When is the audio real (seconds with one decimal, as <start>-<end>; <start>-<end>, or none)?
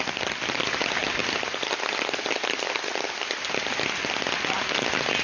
0.0-5.2